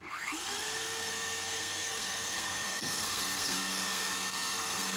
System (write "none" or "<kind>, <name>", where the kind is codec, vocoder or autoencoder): codec, SNAC